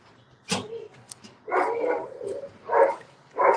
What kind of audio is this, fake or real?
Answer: real